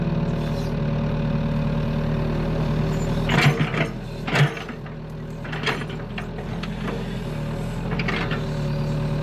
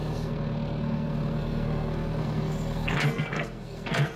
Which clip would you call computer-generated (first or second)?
second